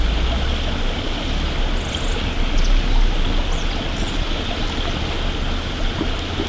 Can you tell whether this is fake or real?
real